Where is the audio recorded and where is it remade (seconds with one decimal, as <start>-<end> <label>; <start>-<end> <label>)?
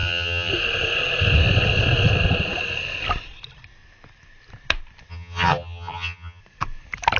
0.0-0.5 remade; 0.5-5.1 recorded; 5.1-6.4 remade; 6.4-7.2 recorded